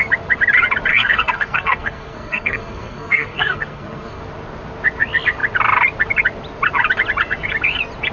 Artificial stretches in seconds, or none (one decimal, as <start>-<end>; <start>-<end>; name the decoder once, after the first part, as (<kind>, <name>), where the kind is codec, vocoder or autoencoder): 0.9-4.2 (codec, SNAC)